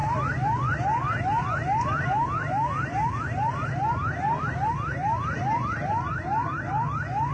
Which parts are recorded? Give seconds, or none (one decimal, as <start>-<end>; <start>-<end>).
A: 0.0-7.3